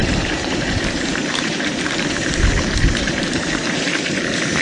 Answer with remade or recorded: remade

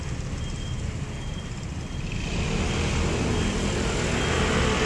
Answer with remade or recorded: recorded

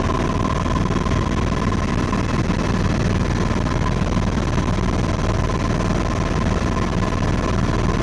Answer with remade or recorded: remade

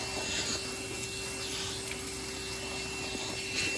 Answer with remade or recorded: recorded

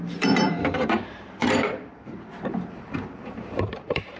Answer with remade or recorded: remade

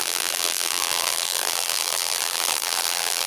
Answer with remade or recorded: remade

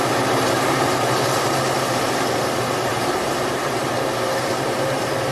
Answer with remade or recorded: remade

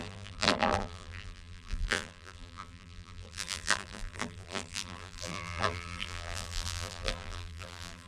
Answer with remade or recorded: remade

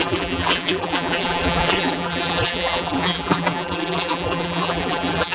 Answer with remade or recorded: remade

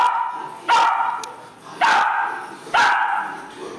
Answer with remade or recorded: recorded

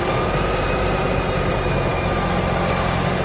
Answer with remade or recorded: remade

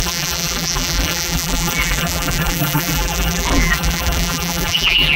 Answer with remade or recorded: remade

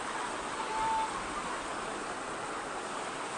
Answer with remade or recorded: recorded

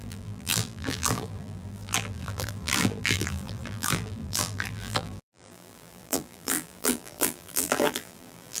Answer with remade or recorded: remade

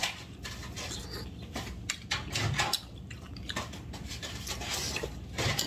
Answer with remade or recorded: recorded